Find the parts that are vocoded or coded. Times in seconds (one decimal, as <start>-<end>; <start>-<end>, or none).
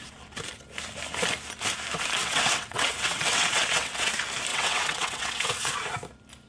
2.2-4.1; 4.5-5.7